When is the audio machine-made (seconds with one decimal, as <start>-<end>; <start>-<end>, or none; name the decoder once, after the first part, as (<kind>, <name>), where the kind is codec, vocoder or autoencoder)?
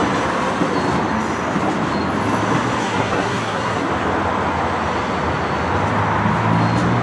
2.8-3.9 (codec, SNAC)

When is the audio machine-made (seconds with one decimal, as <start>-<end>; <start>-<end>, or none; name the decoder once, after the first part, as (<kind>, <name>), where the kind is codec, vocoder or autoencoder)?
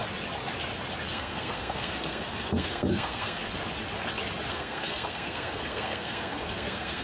1.1-3.4 (codec, SNAC); 4.5-7.0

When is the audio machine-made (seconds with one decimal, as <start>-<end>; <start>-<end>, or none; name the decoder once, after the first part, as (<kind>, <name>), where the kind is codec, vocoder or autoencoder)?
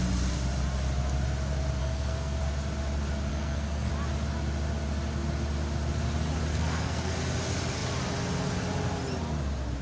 1.8-2.4 (codec, SNAC); 3.3-3.9; 6.5-7.1